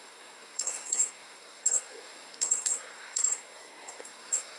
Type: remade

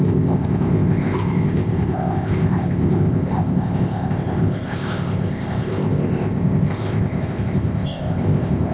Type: remade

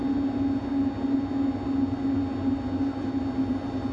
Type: recorded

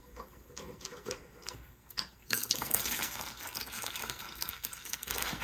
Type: remade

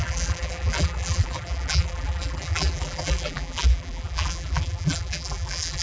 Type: remade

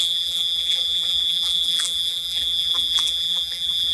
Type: remade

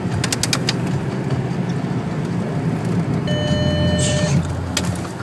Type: recorded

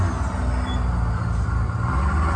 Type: recorded